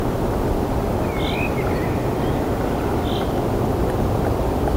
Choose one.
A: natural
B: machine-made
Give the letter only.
A